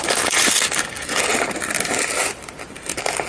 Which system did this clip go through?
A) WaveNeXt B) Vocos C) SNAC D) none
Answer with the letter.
D